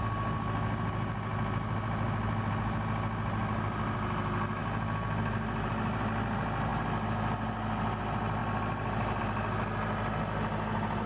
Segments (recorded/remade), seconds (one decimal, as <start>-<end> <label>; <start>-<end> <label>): 0.0-1.3 recorded; 1.3-2.5 remade; 2.5-11.1 recorded